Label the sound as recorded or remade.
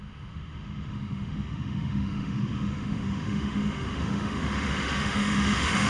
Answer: remade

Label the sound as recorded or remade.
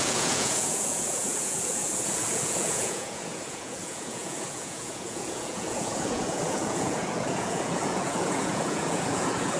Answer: remade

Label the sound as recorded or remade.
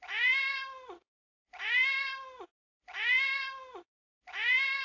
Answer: remade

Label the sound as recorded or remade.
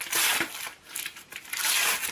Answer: recorded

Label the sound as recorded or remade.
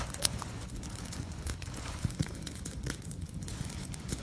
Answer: remade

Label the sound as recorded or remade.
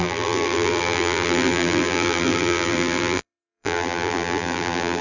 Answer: remade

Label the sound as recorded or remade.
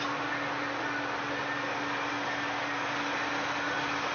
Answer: recorded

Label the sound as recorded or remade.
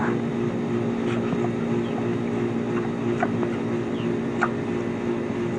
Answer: recorded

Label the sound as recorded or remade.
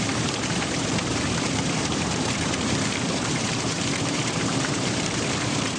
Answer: remade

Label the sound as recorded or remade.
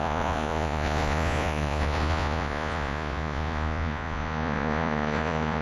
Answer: remade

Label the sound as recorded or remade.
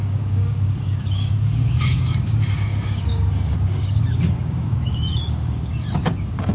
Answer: remade